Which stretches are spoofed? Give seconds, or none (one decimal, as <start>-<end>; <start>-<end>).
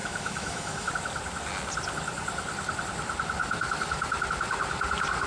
0.0-0.9